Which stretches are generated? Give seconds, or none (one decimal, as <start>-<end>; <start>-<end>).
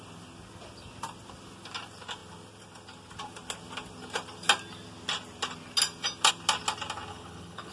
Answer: 7.1-7.7